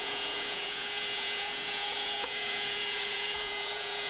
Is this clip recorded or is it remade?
remade